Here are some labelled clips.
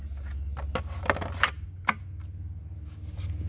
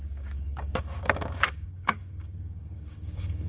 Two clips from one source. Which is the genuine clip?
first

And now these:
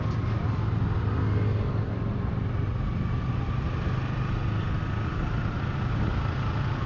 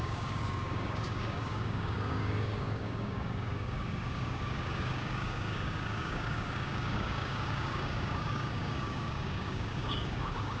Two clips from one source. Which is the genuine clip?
first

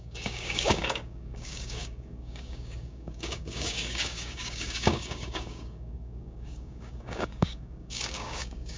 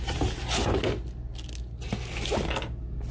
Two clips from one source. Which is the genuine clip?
second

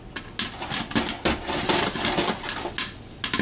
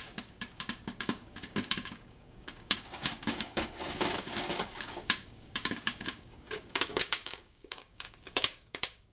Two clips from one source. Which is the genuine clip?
first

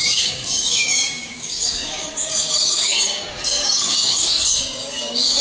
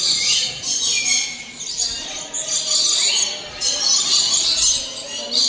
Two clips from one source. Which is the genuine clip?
second